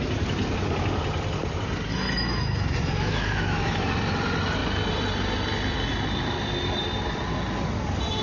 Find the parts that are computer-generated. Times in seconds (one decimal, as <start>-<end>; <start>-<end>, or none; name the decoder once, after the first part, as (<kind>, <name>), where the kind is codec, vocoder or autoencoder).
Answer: 1.9-3.8 (autoencoder, DAC-VAE)